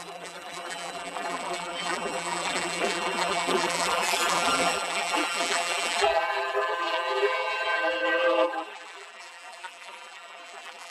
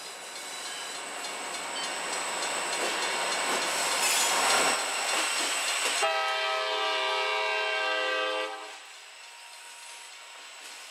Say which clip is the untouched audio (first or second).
second